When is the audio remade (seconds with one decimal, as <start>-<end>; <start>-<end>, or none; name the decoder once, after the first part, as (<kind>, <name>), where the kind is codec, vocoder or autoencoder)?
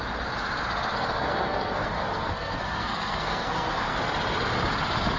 0.9-4.0 (codec, SNAC)